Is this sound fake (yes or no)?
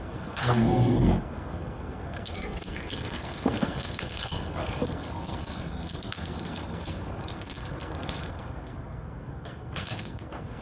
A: yes